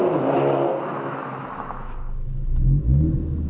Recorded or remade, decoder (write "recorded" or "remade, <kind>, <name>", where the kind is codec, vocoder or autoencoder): recorded